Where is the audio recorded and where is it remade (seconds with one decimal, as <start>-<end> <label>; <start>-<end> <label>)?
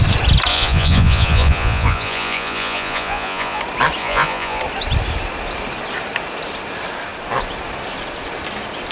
0.0-0.5 recorded; 0.5-3.6 remade; 3.6-4.0 recorded; 4.0-4.6 remade; 4.6-8.9 recorded